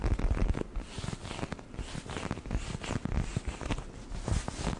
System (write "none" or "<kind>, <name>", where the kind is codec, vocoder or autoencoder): none